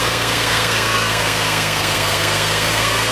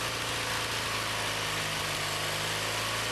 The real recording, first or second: second